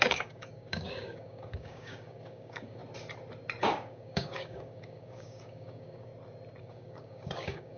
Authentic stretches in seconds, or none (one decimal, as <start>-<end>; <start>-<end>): 2.8-3.6; 6.1-6.6